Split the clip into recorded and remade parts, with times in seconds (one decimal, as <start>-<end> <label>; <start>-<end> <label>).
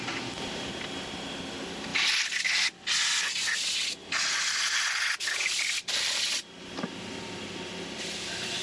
0.0-8.6 recorded